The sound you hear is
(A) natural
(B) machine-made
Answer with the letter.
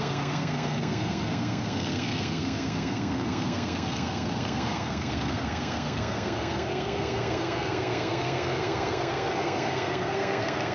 B